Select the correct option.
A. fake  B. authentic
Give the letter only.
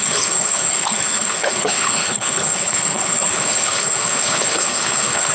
A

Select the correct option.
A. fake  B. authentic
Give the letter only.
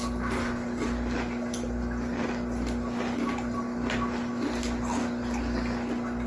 B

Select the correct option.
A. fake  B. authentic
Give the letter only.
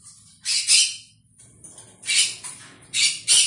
B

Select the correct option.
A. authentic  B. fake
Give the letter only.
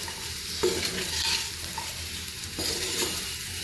B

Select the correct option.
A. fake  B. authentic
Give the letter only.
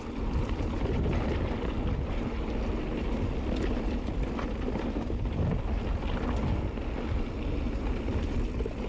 B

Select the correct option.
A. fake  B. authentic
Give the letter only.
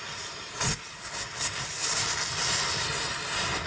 B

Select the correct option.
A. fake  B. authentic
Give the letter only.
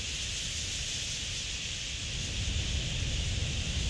B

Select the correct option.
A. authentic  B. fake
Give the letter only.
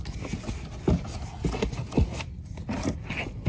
A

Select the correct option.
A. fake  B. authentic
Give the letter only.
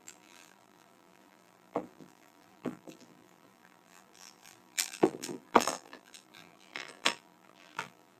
A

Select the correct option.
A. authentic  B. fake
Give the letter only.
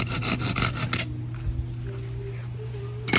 A